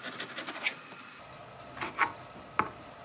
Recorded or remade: recorded